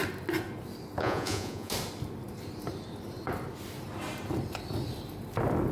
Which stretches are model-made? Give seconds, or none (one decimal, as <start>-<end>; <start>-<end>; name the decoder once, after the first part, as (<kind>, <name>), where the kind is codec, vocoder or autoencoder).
1.0-1.7 (vocoder, Vocos)